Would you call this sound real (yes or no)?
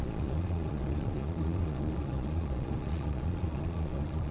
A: no